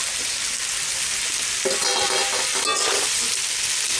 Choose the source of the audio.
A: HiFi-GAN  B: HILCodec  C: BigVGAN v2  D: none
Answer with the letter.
D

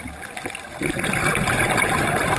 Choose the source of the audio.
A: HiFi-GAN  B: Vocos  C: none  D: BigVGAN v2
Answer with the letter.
C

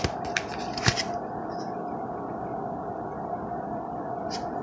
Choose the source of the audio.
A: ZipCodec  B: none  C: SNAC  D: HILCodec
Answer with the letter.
B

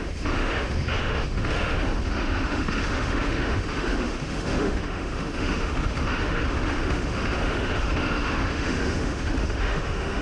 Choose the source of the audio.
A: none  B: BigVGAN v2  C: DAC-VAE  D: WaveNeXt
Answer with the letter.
C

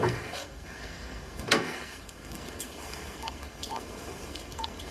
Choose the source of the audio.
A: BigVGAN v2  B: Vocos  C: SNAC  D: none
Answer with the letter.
C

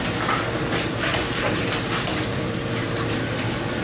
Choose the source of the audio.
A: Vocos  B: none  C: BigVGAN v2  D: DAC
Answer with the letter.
B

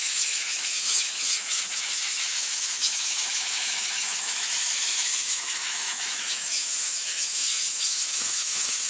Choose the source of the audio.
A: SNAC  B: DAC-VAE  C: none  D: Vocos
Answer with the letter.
B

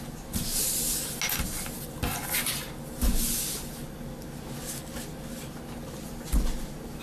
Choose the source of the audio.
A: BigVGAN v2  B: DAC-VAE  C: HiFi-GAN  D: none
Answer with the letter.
D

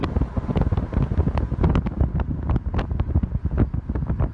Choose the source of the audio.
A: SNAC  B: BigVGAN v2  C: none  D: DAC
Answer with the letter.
C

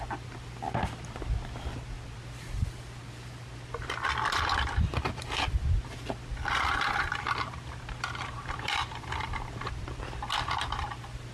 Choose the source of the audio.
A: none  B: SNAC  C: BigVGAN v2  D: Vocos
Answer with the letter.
C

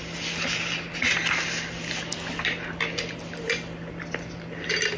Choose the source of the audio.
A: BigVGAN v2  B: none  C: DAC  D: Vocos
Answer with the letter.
B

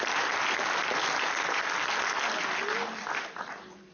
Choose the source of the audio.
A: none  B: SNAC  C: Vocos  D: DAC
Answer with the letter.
A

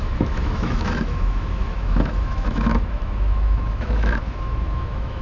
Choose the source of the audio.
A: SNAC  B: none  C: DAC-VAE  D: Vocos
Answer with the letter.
C